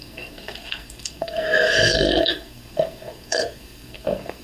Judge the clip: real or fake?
fake